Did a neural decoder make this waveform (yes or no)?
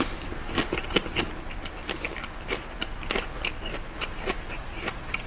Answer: no